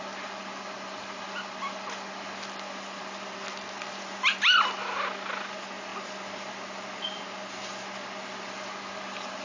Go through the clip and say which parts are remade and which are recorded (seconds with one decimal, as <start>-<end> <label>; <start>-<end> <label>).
0.0-9.4 recorded